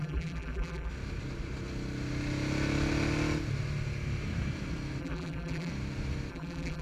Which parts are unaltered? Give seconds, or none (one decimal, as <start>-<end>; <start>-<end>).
0.9-5.0; 5.7-6.3